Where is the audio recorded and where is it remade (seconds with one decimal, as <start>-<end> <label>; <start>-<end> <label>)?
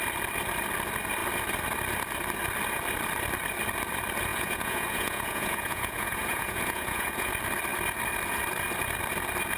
0.0-4.3 recorded; 4.3-7.3 remade; 7.3-9.6 recorded